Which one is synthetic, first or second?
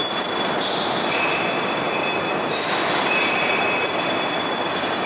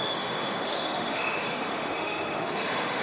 second